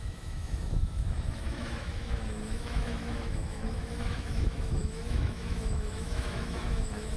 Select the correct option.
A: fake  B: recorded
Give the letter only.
A